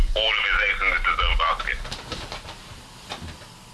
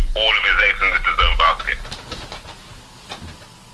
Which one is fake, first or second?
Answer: first